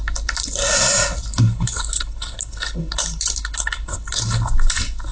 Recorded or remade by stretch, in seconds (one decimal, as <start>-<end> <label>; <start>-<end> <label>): 0.0-1.3 recorded; 1.3-4.4 remade; 4.4-5.1 recorded